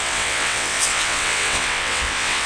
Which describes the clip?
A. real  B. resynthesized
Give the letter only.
B